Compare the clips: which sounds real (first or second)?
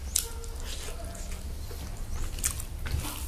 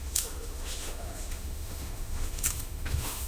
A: first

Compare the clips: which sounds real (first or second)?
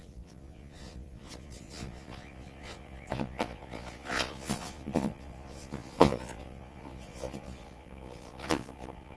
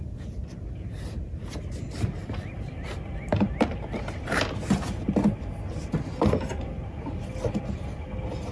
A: second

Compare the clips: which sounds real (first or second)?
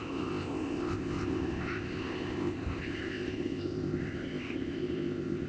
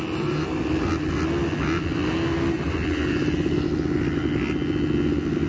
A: second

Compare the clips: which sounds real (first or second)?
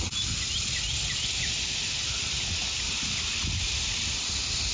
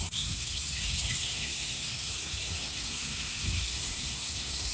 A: first